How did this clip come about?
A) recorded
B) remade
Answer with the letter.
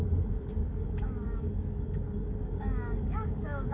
B